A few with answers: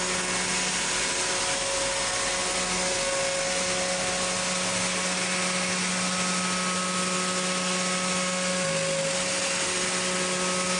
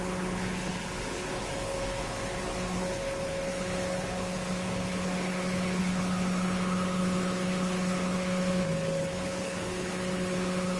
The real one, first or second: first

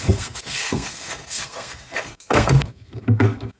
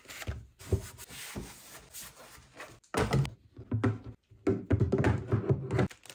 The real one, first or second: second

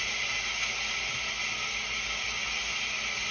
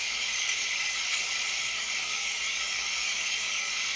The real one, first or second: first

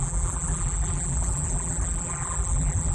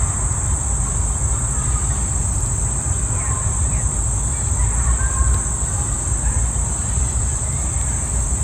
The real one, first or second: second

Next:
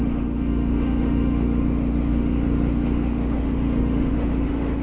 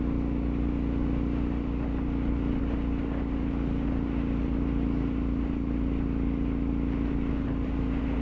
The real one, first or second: second